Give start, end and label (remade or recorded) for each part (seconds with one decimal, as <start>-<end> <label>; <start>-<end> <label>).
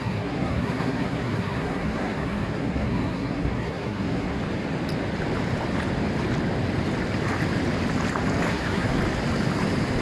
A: 0.0-4.4 remade; 4.4-8.5 recorded; 8.5-9.0 remade; 9.0-10.0 recorded